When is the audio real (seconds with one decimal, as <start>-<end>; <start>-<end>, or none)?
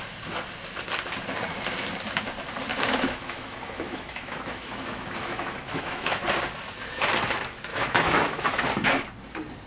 0.0-2.7; 6.2-7.7; 8.6-9.7